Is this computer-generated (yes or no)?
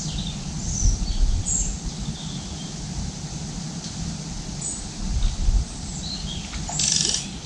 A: no